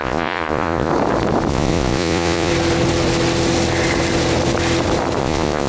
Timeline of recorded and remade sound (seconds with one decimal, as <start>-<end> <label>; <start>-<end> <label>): 0.0-0.9 remade; 0.9-1.5 recorded; 1.5-2.5 remade; 2.5-5.2 recorded; 5.2-5.7 remade